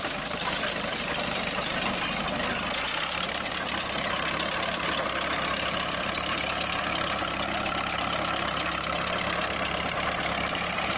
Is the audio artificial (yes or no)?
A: no